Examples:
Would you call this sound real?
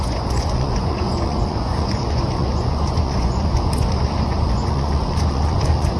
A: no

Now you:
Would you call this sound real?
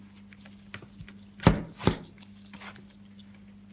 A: yes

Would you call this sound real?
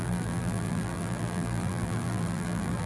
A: no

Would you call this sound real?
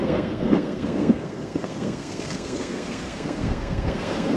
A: no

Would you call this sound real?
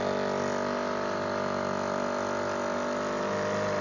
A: yes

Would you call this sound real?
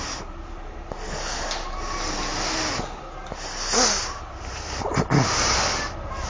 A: yes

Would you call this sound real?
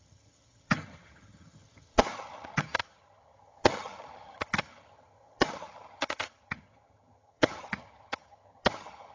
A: no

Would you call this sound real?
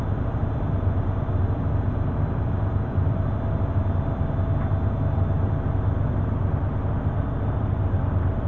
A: no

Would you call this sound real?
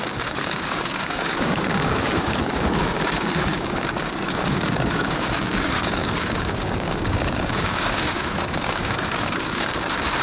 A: no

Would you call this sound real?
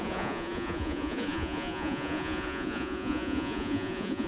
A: no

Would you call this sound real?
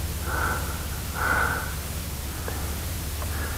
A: yes